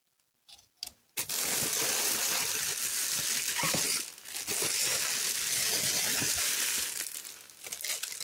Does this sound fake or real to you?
real